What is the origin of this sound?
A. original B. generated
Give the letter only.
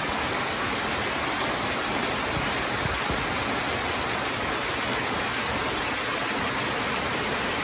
A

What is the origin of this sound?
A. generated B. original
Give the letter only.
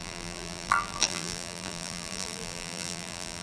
A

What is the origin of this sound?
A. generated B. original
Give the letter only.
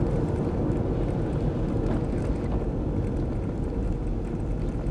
B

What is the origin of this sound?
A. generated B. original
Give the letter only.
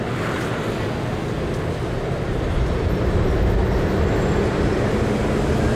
B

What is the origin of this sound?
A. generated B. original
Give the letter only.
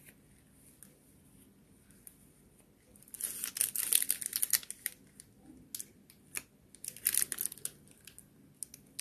B